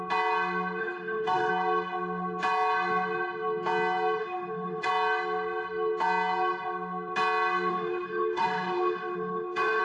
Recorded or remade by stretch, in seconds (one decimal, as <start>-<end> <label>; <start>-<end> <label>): 0.0-0.8 recorded; 0.8-1.5 remade; 1.5-4.2 recorded; 4.2-4.9 remade; 4.9-7.7 recorded; 7.7-9.8 remade